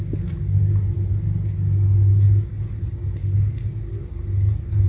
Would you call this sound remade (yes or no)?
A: no